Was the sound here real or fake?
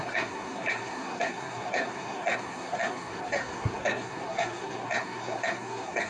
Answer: fake